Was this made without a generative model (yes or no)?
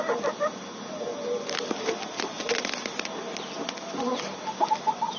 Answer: yes